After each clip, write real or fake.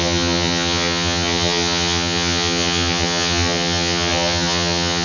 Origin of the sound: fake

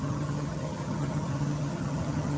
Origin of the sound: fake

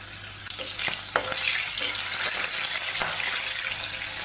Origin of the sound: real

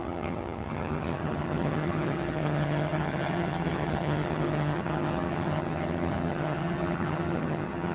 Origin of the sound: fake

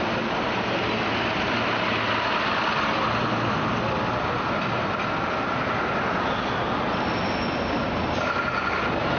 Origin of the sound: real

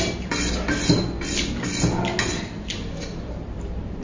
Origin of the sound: real